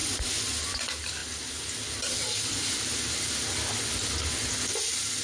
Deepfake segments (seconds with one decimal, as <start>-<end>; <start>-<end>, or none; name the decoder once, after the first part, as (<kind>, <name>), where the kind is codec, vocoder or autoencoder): none